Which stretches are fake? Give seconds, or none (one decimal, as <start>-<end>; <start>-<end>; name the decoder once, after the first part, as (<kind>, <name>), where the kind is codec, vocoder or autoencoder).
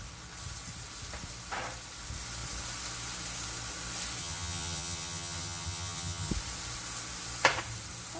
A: 4.2-6.3 (vocoder, HiFi-GAN)